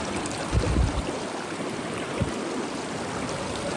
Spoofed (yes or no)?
no